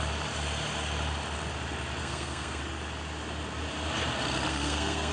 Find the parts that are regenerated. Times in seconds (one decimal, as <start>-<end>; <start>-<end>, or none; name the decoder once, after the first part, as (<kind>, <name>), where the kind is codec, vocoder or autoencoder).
2.0-2.6 (codec, SNAC); 4.5-5.1